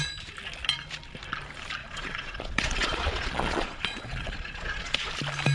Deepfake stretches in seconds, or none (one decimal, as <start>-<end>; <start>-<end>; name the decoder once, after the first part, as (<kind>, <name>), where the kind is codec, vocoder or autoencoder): 1.8-5.1 (vocoder, Vocos)